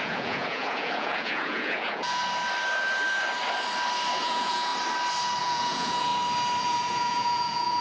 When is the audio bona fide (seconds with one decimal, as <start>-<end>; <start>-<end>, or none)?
2.2-4.1; 4.7-5.4; 6.1-6.6